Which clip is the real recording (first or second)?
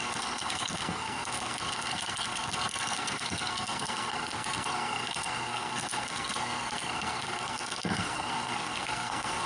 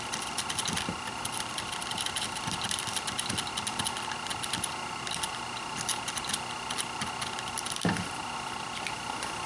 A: second